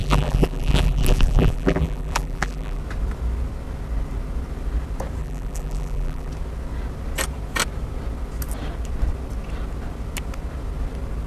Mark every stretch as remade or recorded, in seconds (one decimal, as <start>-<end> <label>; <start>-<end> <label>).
0.0-2.8 remade; 2.8-5.2 recorded; 5.2-6.3 remade; 6.3-11.3 recorded